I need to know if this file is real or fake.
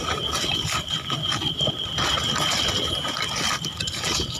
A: real